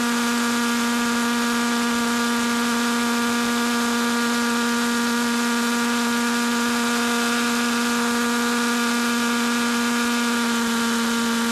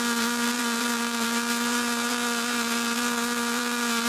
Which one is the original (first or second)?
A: first